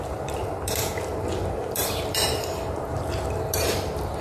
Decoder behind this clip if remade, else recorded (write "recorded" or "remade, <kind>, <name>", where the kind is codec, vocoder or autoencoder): remade, vocoder, BigVGAN v2